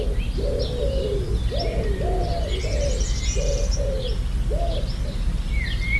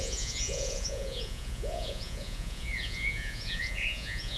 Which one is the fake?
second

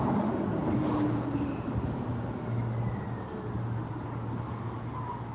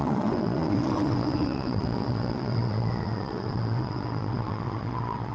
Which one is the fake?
second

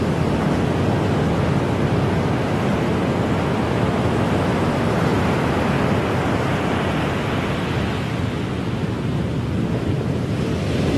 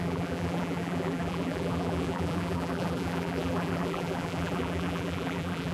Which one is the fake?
second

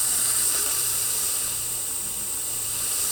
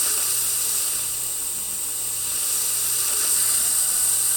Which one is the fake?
first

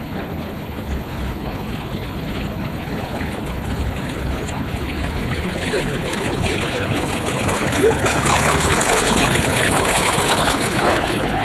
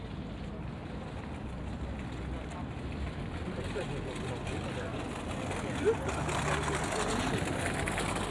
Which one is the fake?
first